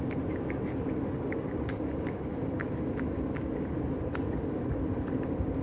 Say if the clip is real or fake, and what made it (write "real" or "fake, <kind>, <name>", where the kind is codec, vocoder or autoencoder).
real